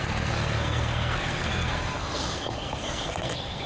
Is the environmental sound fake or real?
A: fake